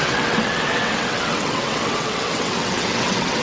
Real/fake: fake